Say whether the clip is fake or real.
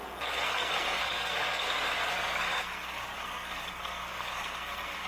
fake